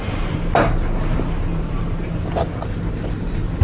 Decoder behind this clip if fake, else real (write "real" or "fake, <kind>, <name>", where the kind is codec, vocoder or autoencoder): real